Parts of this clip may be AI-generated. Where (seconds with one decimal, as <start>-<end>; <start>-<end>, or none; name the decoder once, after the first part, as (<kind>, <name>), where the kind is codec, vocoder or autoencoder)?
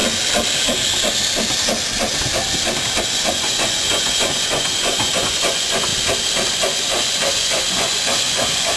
3.0-5.9 (vocoder, Vocos); 6.5-8.8